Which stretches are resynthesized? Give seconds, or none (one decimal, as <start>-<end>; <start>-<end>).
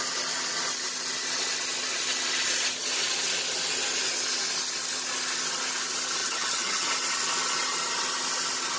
6.2-6.9